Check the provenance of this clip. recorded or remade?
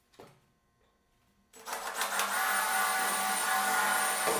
recorded